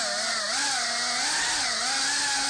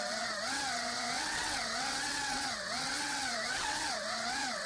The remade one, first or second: second